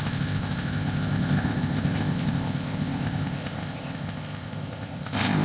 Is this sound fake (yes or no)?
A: yes